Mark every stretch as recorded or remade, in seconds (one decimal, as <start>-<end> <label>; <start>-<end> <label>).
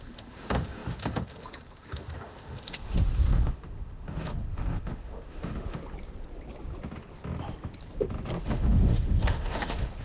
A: 0.0-5.8 remade; 5.8-8.4 recorded; 8.4-10.0 remade